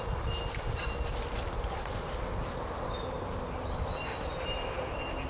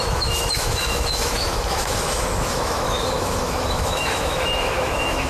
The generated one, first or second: second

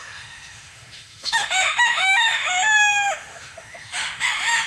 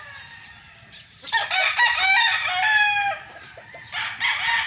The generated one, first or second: first